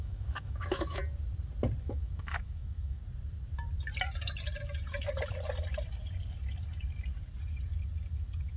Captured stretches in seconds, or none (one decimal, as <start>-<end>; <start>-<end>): 1.0-1.8; 3.0-8.1